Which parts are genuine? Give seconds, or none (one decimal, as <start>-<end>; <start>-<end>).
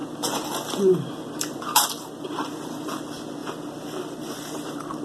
3.0-3.4